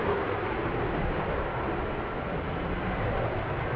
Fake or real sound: real